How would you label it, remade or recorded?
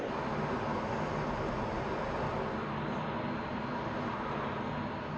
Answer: recorded